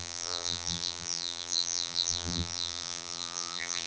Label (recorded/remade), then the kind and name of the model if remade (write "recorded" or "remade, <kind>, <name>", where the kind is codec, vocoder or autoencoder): remade, vocoder, BigVGAN v2